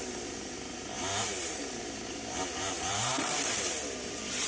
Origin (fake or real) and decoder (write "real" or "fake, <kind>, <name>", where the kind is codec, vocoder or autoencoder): fake, vocoder, BigVGAN v2